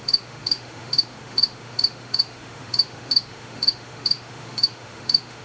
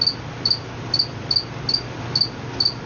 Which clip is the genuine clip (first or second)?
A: second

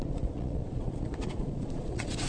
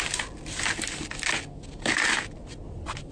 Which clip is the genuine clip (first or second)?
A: second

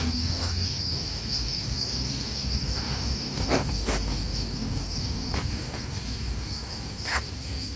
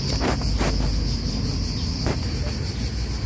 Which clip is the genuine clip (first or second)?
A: second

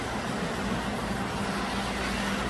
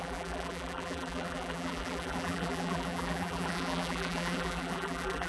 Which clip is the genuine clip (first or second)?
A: first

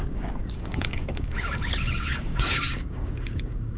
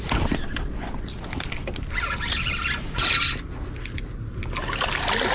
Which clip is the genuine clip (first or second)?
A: second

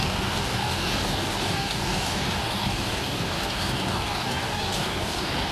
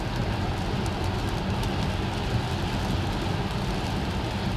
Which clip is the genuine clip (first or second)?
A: second